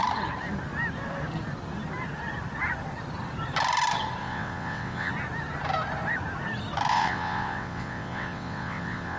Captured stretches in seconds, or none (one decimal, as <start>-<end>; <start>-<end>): 0.0-4.2; 5.1-6.9